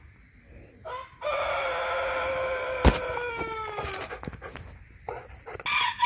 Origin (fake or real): real